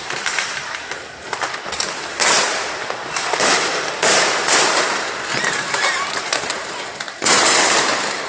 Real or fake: fake